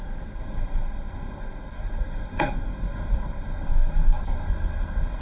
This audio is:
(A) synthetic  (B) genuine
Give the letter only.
A